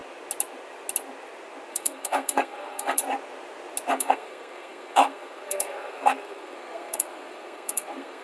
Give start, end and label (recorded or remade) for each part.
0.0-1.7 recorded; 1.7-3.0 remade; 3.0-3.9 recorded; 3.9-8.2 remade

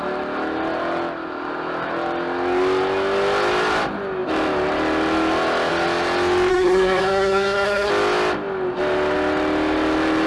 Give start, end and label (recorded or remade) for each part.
0.0-6.5 recorded; 6.5-7.9 remade; 7.9-10.3 recorded

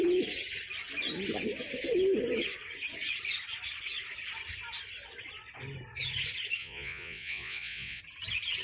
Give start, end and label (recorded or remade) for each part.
0.0-6.6 recorded; 6.6-8.0 remade; 8.0-8.6 recorded

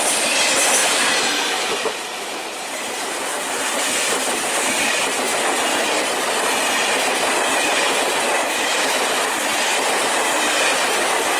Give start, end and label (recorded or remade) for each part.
0.0-0.8 recorded; 0.8-4.8 remade; 4.8-11.4 recorded